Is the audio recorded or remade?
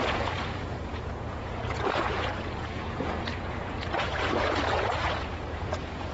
remade